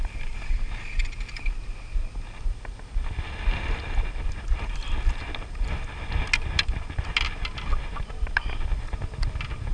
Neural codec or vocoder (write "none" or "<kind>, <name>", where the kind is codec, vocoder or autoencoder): none